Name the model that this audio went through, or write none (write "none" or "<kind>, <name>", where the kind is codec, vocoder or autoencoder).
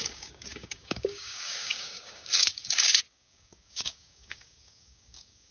codec, DAC